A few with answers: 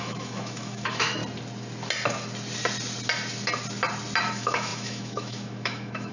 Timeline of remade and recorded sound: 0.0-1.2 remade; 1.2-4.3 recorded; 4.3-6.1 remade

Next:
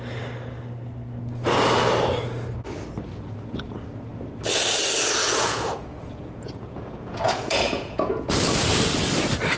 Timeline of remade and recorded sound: 0.0-5.2 recorded; 5.2-8.2 remade; 8.2-9.6 recorded

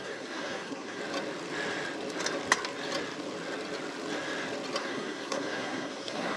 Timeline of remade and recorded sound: 0.0-1.0 remade; 1.0-4.8 recorded; 4.8-6.4 remade

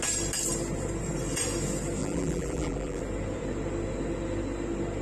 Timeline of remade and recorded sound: 0.0-2.0 recorded; 2.0-3.0 remade; 3.0-5.0 recorded

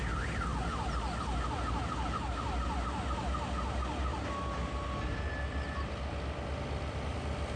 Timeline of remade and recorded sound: 0.0-7.6 recorded

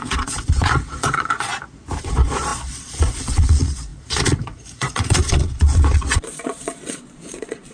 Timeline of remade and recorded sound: 0.0-1.5 remade; 1.5-2.0 recorded; 2.0-7.7 remade

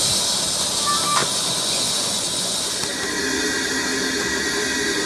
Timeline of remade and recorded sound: 0.0-1.2 recorded; 1.2-2.8 remade; 2.8-5.1 recorded

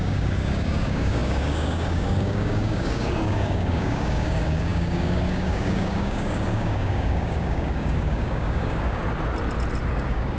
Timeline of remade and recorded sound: 0.0-9.0 remade; 9.0-9.9 recorded; 9.9-10.4 remade